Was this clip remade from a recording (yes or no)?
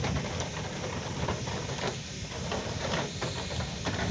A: no